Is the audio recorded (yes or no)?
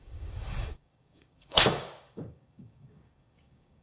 no